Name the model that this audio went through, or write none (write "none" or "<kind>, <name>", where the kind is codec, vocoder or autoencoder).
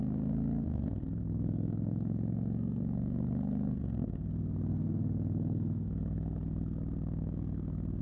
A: codec, SNAC